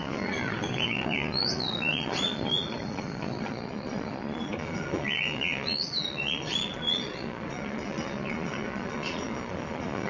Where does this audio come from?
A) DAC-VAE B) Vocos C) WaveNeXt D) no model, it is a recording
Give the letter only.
B